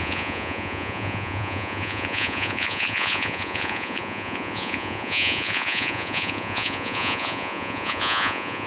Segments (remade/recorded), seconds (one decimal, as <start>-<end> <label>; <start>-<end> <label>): 0.0-8.7 remade